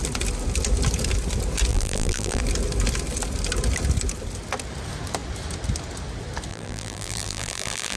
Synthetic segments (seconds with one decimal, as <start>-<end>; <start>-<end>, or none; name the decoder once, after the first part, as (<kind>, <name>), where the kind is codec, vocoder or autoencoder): 1.7-2.4 (vocoder, BigVGAN v2); 6.5-8.0